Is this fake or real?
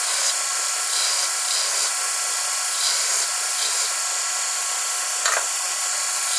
real